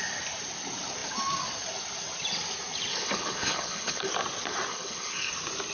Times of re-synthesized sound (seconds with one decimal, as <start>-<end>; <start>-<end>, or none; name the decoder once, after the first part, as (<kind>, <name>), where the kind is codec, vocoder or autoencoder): 2.9-4.1 (codec, HILCodec); 4.7-5.3